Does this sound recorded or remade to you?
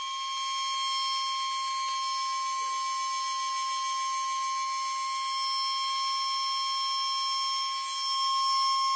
recorded